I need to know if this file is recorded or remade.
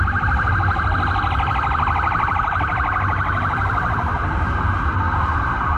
recorded